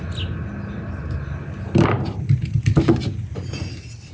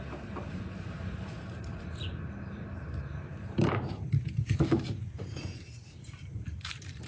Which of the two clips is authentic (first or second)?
first